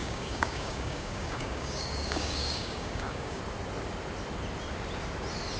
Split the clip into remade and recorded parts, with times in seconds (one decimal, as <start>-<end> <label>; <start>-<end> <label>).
0.0-3.4 remade; 3.4-5.6 recorded